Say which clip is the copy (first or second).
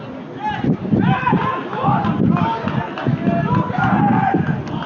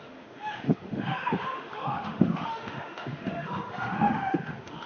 second